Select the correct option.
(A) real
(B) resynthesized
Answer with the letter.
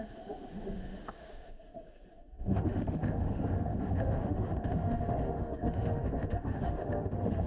B